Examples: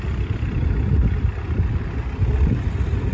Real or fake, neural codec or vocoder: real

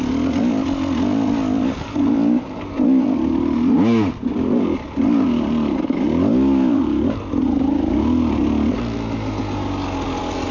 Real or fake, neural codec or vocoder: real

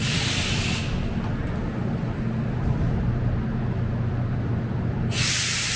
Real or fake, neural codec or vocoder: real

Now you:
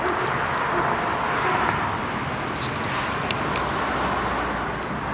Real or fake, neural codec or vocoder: real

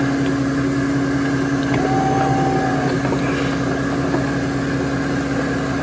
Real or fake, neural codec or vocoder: real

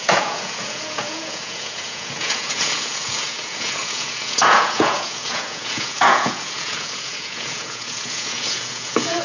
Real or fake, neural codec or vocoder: fake, vocoder, Vocos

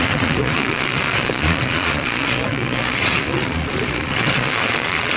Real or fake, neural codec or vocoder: fake, vocoder, Vocos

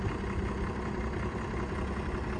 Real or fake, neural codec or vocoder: real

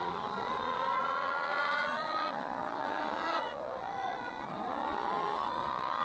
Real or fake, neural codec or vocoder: fake, vocoder, Vocos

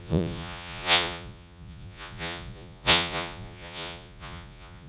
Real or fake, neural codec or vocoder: fake, vocoder, Vocos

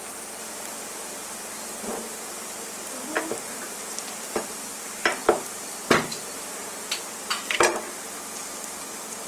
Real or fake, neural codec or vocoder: real